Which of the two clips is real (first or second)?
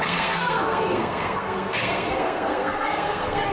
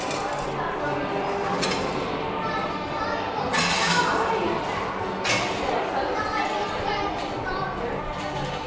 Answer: second